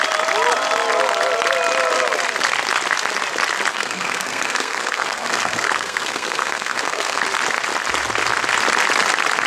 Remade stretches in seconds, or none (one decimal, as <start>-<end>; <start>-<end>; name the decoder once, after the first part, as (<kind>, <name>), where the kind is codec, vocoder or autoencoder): 3.7-7.2 (codec, SNAC)